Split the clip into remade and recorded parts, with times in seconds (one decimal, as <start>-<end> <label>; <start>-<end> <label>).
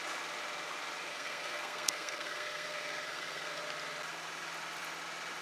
0.0-1.1 recorded; 1.1-3.6 remade; 3.6-5.4 recorded